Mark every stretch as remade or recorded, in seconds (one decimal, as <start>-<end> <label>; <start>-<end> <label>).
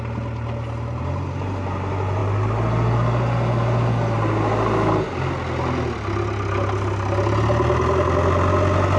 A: 0.0-9.0 recorded